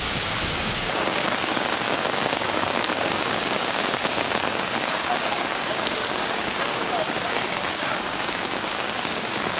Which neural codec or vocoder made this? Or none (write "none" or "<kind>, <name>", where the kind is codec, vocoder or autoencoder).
codec, DAC